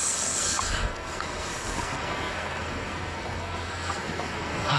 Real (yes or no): no